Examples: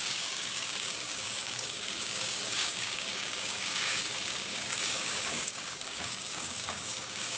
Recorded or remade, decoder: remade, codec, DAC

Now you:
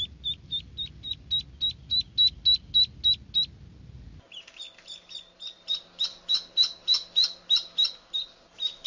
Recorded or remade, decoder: recorded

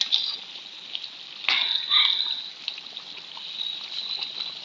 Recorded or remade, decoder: recorded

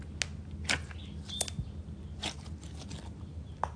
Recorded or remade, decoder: recorded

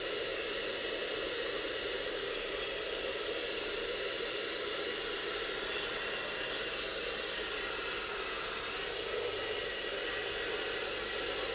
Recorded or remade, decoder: recorded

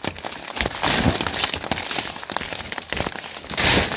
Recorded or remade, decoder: recorded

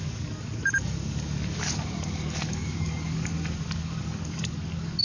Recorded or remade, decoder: remade, codec, DAC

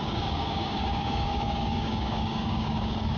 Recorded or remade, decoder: remade, codec, DAC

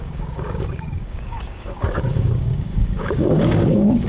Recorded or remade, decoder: remade, codec, DAC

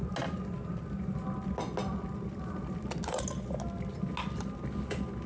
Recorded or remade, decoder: recorded